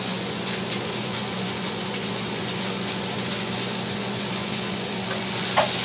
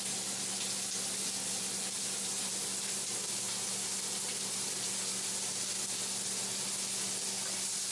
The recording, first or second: second